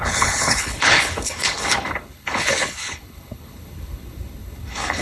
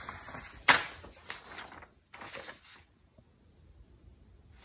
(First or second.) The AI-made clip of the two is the first